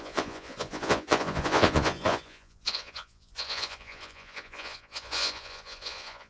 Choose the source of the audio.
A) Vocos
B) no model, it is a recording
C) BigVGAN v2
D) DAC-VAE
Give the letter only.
A